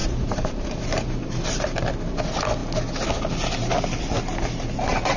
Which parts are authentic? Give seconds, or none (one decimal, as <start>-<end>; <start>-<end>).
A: 1.6-5.2